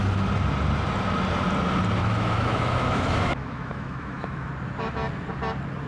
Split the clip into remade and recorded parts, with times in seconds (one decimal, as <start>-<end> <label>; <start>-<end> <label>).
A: 0.0-2.0 recorded; 2.0-4.5 remade; 4.5-5.9 recorded